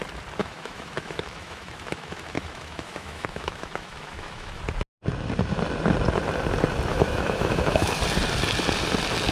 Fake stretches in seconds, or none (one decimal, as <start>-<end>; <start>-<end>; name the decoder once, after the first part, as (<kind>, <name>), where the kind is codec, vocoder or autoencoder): 0.4-4.6 (autoencoder, DAC-VAE); 6.9-7.9